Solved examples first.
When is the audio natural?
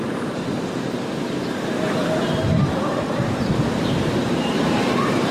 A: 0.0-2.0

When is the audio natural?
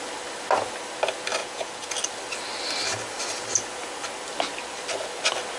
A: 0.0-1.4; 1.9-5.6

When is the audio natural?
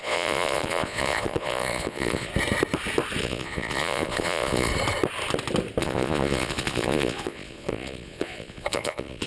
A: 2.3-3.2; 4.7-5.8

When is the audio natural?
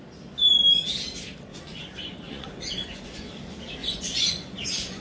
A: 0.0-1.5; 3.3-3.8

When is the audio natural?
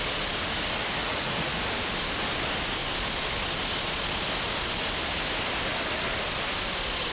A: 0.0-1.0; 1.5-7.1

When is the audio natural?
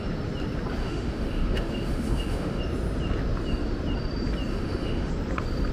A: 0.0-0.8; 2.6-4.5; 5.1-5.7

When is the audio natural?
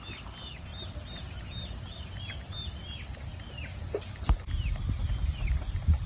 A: 0.0-6.1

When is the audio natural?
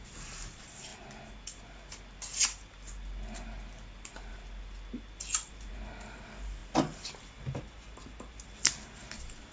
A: 0.0-9.5